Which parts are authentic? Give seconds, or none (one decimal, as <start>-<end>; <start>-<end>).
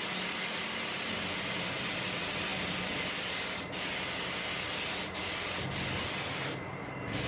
0.0-7.3